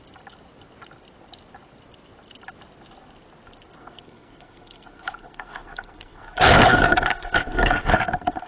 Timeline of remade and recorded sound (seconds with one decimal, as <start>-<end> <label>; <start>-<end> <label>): 0.0-3.8 recorded; 3.8-8.5 remade